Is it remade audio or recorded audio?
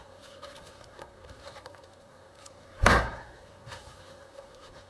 remade